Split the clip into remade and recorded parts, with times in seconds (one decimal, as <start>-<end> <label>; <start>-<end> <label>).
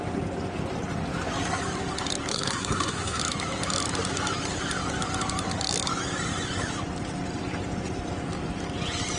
0.0-2.3 recorded; 2.3-3.2 remade; 3.2-9.2 recorded